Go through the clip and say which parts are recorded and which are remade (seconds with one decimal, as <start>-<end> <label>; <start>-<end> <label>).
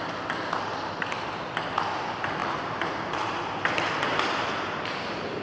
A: 0.0-5.4 recorded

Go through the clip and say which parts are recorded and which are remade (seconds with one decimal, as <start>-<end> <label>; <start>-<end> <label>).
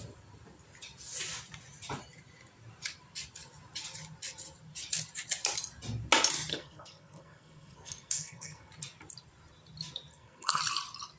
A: 0.0-6.5 recorded; 6.5-8.7 remade; 8.7-10.1 recorded; 10.1-10.6 remade; 10.6-11.2 recorded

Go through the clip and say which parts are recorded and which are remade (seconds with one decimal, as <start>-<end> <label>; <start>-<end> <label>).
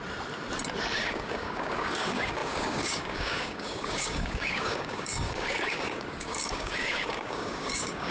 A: 0.0-1.0 recorded; 1.0-8.1 remade